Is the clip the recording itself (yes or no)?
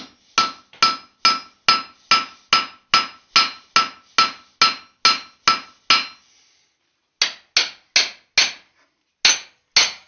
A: yes